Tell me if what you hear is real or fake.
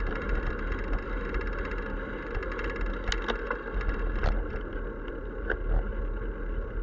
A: real